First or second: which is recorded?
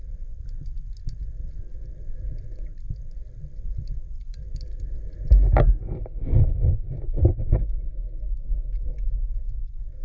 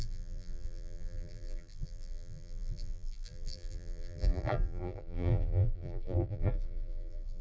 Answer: first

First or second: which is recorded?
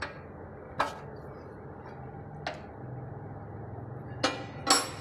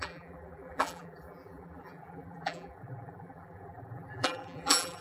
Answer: first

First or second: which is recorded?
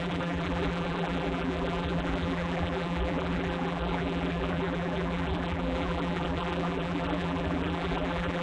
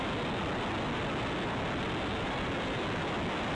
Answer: second